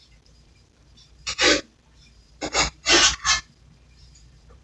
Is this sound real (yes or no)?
no